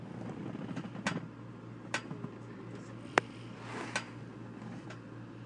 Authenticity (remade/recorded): recorded